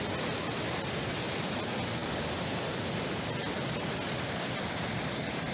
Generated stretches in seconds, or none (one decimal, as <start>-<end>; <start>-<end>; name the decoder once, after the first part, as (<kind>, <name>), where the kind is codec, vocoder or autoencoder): none